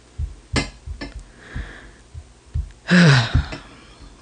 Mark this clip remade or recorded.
recorded